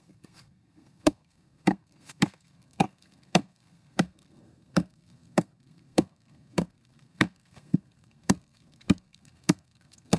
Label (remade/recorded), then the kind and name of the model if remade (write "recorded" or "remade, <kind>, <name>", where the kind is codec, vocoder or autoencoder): remade, codec, SNAC